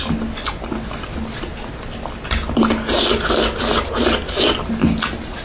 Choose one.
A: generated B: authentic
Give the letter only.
B